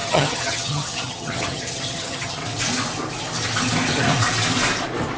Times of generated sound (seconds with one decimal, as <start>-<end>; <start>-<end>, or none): 0.0-2.4